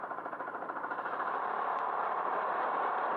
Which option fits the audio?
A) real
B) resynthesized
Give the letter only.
B